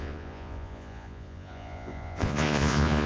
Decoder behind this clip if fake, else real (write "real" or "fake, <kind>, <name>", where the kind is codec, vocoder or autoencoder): fake, vocoder, Vocos